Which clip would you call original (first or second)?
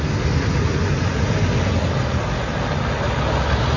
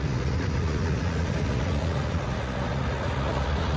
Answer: first